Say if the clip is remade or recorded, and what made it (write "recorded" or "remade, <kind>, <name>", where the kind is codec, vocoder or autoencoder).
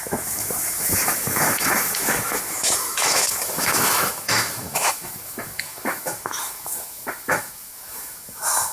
remade, autoencoder, DAC-VAE